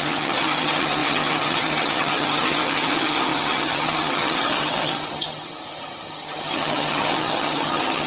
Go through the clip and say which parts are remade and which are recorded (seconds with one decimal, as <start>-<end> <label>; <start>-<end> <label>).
0.0-8.1 remade